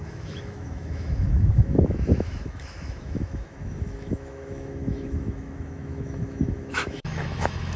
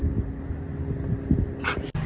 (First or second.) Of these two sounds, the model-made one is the first